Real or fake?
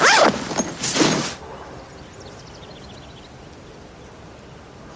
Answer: real